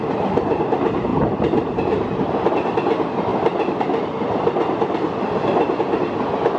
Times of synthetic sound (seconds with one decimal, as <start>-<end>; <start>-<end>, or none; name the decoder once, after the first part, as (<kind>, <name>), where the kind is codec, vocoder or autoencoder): 1.1-2.5 (vocoder, BigVGAN v2)